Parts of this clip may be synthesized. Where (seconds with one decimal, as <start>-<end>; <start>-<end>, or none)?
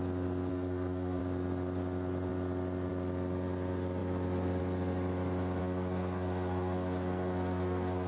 0.5-1.2; 5.6-8.1